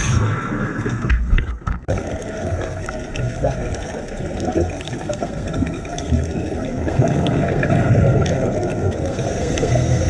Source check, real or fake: fake